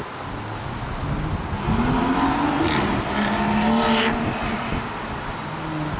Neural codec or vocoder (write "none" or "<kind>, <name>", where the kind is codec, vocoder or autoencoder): none